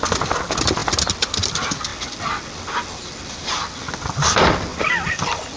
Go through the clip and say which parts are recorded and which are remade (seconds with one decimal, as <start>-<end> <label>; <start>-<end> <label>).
0.0-1.9 recorded; 1.9-3.5 remade; 3.5-4.7 recorded; 4.7-5.6 remade